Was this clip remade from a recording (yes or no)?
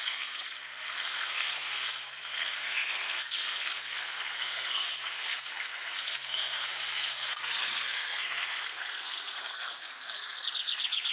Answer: yes